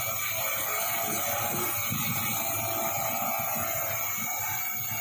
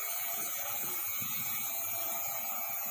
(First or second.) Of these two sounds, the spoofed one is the second